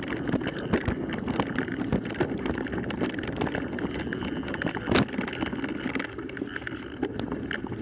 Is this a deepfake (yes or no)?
no